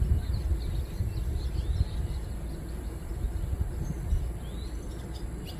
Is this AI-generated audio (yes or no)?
no